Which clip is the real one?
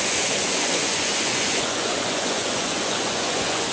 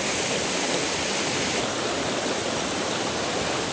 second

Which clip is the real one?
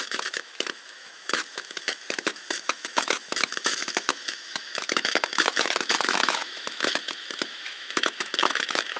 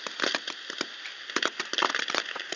second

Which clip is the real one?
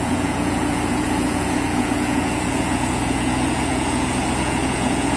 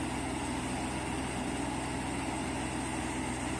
second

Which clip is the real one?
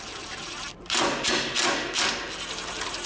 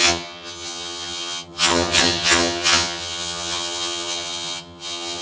first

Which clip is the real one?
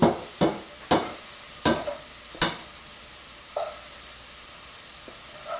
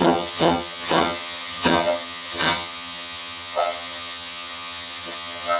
first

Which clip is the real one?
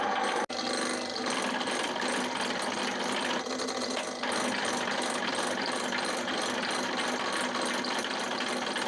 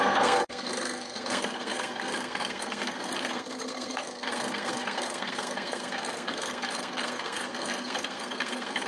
first